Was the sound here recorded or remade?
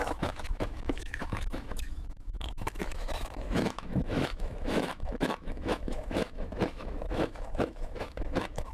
remade